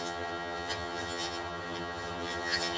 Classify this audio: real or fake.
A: fake